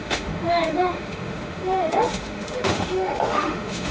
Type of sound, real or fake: fake